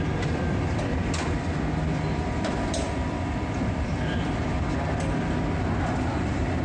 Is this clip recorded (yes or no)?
no